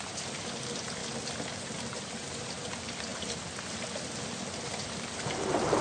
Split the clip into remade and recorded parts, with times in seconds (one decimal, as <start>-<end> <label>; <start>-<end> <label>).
0.0-5.8 recorded